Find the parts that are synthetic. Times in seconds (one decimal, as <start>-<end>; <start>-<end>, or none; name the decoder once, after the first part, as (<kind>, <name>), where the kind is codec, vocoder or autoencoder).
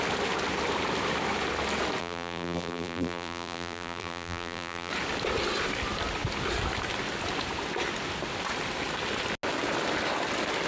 2.0-4.9 (vocoder, BigVGAN v2)